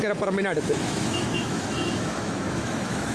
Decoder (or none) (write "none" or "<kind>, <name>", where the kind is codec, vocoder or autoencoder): autoencoder, DAC-VAE